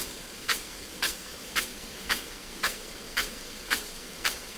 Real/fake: fake